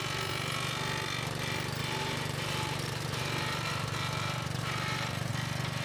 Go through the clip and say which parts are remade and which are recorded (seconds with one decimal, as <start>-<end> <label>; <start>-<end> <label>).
0.0-1.8 recorded; 1.8-5.3 remade; 5.3-5.8 recorded